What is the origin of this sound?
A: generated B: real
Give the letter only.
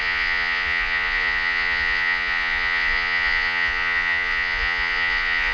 A